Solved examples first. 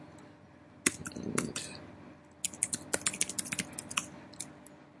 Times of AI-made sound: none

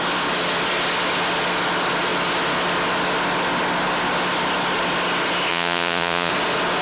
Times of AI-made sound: 5.5-6.3 (vocoder, Vocos)